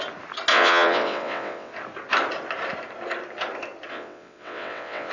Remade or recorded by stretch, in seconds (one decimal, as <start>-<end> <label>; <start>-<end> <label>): 0.0-0.5 recorded; 0.5-1.7 remade; 1.7-3.9 recorded; 3.9-5.1 remade